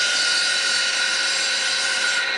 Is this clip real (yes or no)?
no